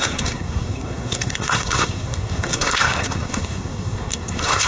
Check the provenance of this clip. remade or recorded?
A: remade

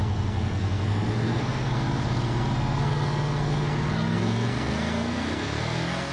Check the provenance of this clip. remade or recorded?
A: remade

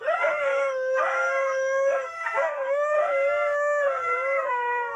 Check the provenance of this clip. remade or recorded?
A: remade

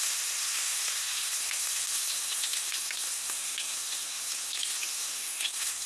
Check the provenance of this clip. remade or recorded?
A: remade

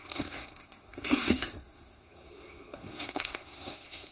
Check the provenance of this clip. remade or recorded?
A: remade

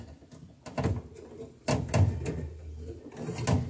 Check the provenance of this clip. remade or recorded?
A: recorded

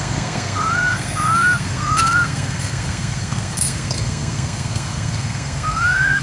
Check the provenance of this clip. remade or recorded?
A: remade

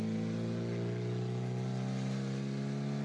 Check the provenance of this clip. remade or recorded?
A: recorded